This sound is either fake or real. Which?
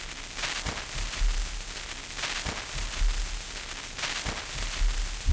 real